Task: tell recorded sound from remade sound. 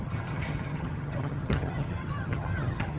remade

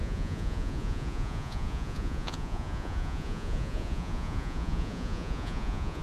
remade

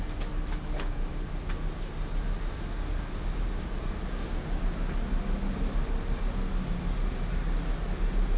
recorded